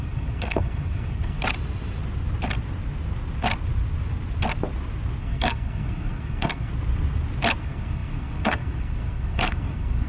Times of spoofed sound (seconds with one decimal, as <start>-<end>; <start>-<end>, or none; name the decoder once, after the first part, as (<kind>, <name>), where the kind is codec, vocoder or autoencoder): 0.0-1.4 (codec, SNAC); 5.2-6.7; 7.6-10.1